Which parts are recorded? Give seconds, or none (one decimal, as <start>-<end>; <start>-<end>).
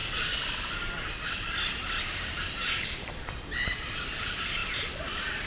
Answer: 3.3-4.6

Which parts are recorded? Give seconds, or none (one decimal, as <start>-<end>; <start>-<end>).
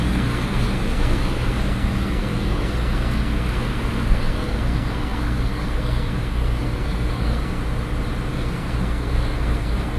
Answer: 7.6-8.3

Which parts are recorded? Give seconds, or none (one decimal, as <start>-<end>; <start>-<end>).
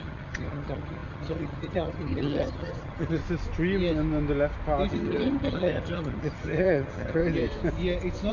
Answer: 3.2-4.9; 7.2-8.3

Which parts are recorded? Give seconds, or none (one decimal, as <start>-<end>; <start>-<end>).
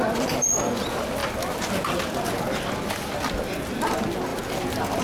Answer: 0.0-5.0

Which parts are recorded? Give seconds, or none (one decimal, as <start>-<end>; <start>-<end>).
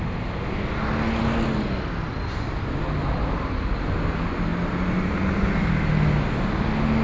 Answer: 0.0-7.0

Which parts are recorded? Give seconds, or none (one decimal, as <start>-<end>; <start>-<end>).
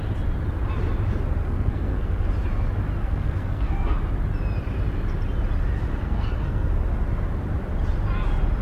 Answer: 0.0-1.4; 2.3-3.0; 4.0-6.0; 6.7-8.6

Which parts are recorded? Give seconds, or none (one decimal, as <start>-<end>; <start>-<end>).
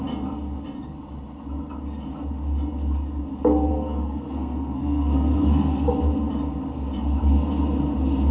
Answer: 0.0-3.7; 5.9-8.3